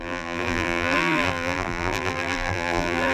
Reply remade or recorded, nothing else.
remade